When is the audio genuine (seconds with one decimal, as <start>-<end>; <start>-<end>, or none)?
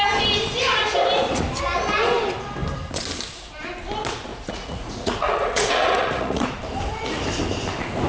0.0-4.3; 6.6-8.1